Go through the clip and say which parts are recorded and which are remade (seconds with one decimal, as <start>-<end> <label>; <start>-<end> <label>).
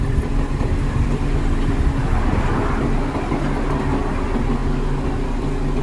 0.0-5.8 recorded